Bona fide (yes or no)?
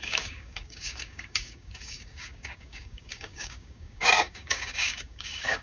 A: no